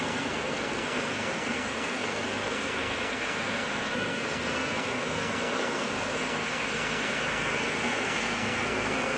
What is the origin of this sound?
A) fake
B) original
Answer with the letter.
A